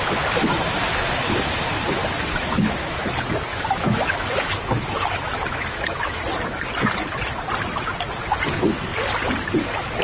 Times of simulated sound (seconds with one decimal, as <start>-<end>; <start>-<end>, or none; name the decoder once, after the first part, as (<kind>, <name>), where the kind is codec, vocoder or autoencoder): 2.3-3.0 (autoencoder, DAC-VAE); 3.5-6.2